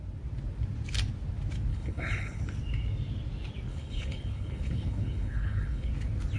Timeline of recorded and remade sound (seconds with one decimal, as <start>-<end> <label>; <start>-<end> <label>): 0.0-1.7 recorded; 1.7-2.4 remade; 2.4-3.7 recorded; 3.7-5.9 remade; 5.9-6.4 recorded